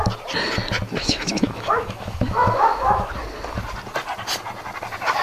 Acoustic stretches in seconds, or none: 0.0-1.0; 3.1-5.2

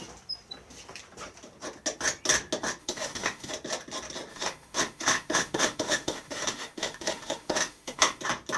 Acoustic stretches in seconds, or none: 0.0-2.8; 3.5-4.3; 8.2-8.6

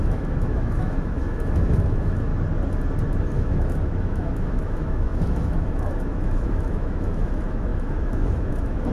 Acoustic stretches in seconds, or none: 2.3-3.2

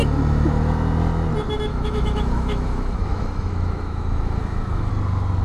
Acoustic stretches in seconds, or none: 0.0-1.7; 4.9-5.4

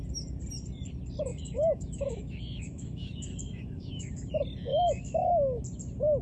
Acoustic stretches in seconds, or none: 0.0-1.3; 4.3-4.7; 5.6-6.2

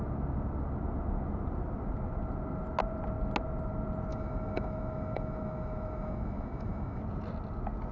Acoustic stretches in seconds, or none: 0.0-4.1; 7.0-7.9

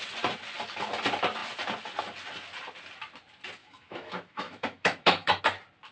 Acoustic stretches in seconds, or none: 0.0-3.6; 5.4-5.9